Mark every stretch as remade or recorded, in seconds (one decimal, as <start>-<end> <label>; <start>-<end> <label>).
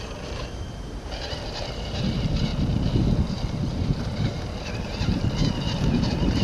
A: 0.0-6.4 remade